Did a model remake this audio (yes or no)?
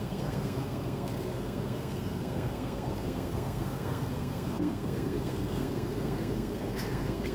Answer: yes